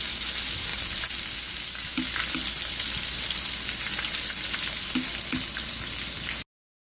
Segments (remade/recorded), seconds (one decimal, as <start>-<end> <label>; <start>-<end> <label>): 0.0-6.9 recorded